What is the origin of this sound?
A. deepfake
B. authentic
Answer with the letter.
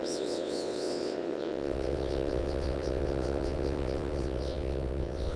A